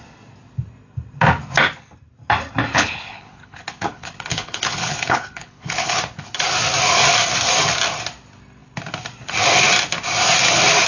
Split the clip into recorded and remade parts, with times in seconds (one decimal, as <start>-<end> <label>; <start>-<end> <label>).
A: 0.0-2.7 recorded; 2.7-6.0 remade; 6.0-10.9 recorded